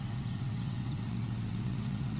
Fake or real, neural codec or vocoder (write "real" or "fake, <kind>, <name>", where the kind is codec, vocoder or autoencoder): fake, vocoder, WaveNeXt